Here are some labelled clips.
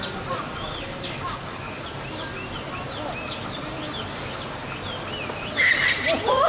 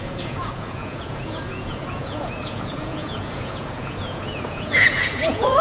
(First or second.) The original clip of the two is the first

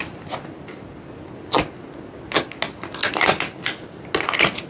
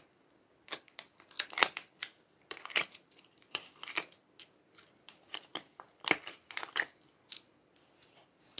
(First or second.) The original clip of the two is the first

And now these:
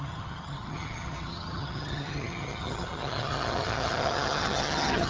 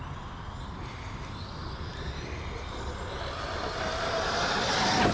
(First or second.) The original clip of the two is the second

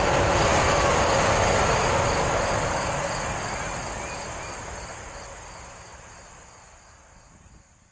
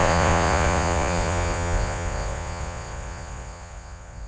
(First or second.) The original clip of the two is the first